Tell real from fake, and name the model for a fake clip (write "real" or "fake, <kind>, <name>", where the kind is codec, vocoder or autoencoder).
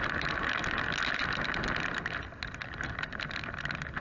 real